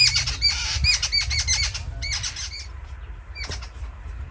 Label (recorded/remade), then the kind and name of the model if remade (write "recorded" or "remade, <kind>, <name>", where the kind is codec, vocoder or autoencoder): recorded